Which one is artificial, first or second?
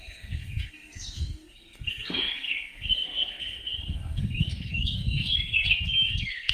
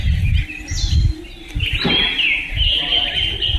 first